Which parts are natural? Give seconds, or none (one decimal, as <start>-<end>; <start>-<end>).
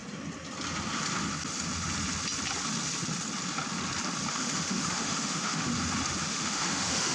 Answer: 0.0-4.3; 5.7-6.2